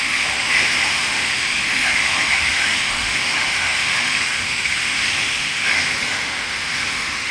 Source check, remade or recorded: remade